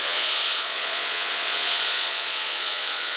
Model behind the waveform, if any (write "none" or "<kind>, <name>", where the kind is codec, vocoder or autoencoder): vocoder, Vocos